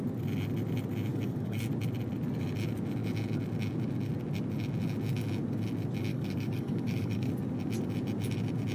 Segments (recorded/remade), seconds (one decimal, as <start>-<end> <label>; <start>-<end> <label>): 0.0-1.1 recorded; 1.1-1.6 remade; 1.6-6.1 recorded; 6.1-7.3 remade; 7.3-8.7 recorded